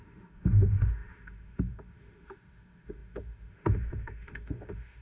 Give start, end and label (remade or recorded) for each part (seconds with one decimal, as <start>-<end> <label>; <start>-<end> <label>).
0.0-5.0 remade